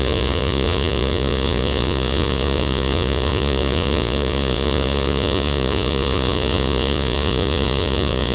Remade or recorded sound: remade